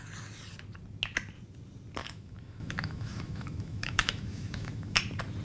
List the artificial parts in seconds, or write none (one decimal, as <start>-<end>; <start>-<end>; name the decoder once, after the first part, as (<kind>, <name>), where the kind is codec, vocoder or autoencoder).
2.0-5.0 (autoencoder, DAC-VAE)